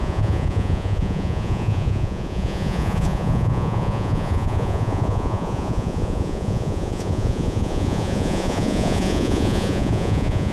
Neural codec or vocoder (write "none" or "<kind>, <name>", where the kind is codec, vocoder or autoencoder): vocoder, Vocos